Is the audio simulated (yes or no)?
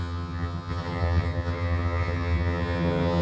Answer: yes